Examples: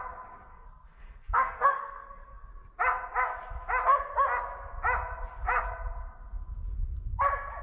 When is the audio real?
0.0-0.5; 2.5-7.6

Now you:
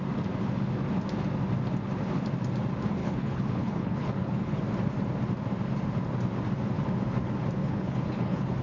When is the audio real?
0.0-3.0; 4.6-7.6

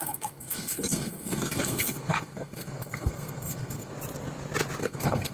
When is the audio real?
3.9-4.8

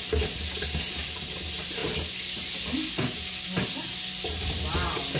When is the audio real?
0.0-5.2

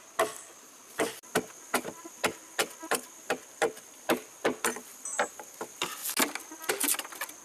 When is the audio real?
0.0-7.4